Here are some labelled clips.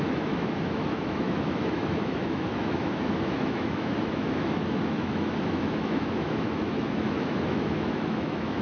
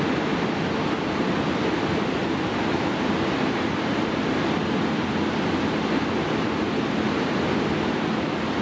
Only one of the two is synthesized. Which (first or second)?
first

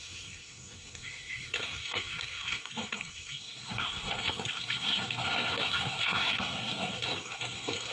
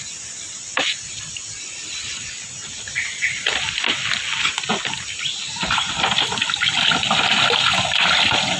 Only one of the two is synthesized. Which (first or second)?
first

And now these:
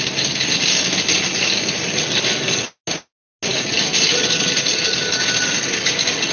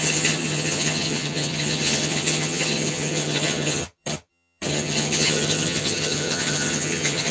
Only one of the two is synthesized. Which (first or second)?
second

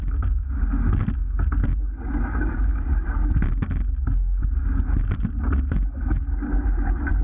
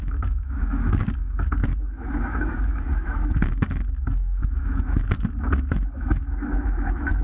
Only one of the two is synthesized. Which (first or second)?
second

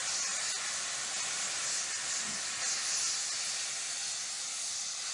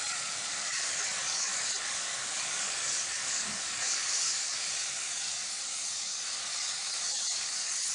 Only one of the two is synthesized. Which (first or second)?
second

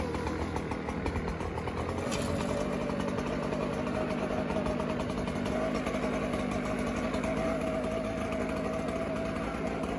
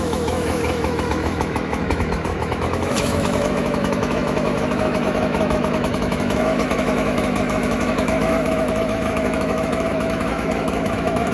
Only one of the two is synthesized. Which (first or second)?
second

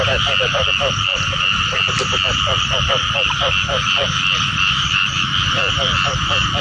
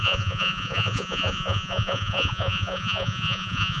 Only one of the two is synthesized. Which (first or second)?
second